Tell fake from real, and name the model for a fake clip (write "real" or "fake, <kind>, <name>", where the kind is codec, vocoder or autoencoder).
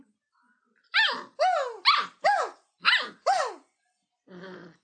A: real